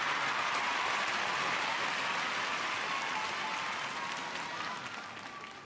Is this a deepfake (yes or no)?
no